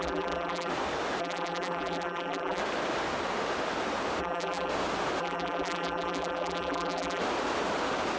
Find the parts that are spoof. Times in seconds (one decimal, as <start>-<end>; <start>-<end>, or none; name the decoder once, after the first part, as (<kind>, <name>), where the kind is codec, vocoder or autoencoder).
0.0-0.7 (vocoder, BigVGAN v2); 1.2-2.6; 4.2-4.7; 5.2-7.2